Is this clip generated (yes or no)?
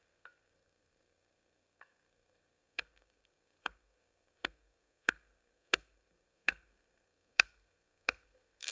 yes